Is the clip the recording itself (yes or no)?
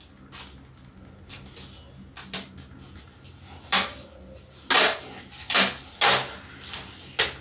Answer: yes